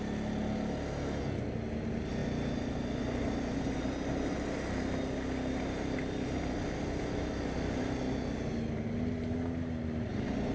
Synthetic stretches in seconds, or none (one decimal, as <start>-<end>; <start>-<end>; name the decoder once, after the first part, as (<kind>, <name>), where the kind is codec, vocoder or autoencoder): none